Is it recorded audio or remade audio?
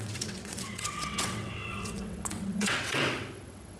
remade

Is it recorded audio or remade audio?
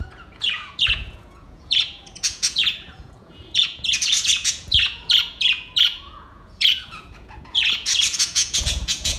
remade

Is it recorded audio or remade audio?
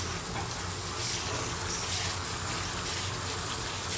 recorded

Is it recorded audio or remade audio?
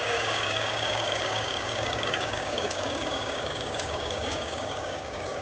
remade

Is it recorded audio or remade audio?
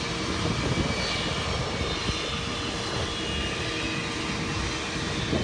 recorded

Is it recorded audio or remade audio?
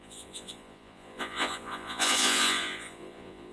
remade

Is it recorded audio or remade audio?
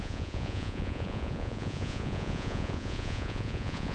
remade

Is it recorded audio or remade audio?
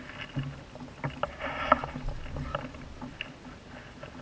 recorded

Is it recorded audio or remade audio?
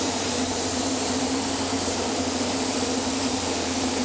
remade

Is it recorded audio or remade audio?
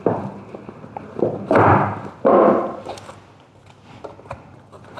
recorded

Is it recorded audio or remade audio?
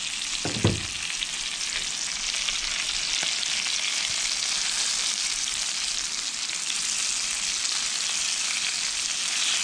recorded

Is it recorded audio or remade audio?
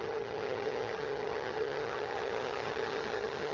remade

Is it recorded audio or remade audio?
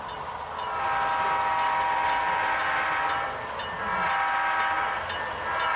recorded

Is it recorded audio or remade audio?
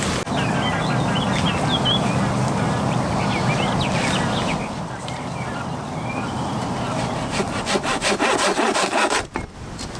recorded